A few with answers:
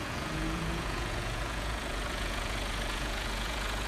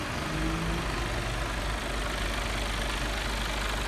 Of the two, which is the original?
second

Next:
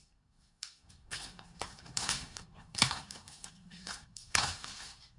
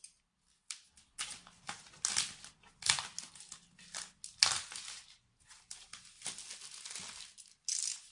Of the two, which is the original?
second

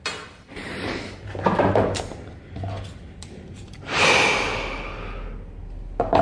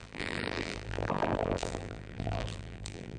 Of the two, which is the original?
first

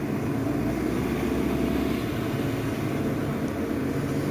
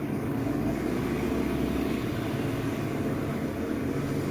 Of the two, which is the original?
first